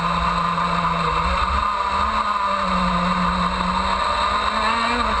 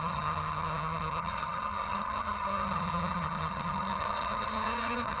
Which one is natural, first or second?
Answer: first